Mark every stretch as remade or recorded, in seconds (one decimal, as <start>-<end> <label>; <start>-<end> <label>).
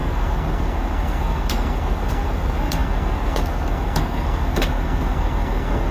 0.0-5.9 remade